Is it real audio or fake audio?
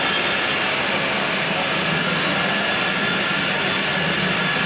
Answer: real